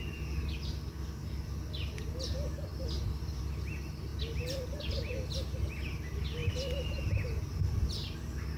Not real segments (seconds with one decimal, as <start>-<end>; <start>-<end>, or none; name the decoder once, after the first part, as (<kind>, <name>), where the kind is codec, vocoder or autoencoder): none